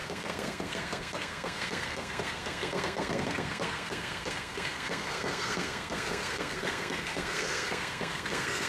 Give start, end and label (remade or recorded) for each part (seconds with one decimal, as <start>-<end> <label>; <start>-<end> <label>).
0.0-8.7 remade